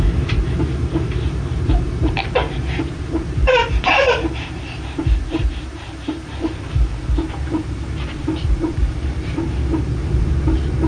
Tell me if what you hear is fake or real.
fake